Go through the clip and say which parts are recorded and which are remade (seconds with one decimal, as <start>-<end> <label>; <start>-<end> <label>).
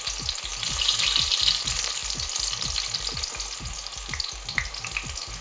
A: 0.0-5.4 recorded